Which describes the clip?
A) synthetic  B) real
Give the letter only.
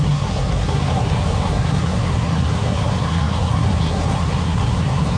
A